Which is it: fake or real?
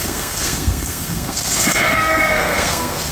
fake